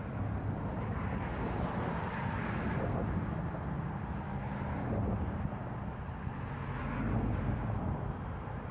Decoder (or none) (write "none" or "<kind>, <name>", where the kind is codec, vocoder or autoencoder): none